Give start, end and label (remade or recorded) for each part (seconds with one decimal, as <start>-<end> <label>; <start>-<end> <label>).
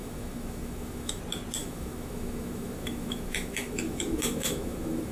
0.0-1.2 remade; 1.2-1.6 recorded; 1.6-5.1 remade